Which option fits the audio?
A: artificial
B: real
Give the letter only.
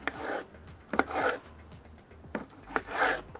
A